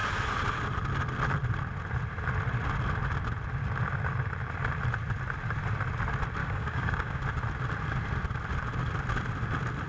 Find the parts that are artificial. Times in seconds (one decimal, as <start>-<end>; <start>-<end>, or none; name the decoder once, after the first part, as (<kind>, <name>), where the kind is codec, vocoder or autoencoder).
6.4-7.2 (codec, DAC)